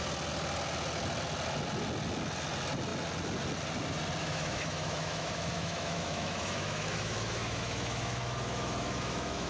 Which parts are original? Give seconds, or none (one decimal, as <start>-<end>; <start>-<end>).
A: 0.0-4.2

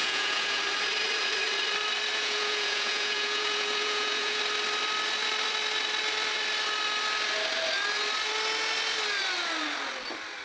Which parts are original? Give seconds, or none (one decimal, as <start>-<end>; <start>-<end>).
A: 0.6-2.1; 4.4-10.4